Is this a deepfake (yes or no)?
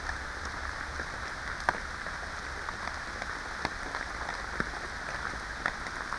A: no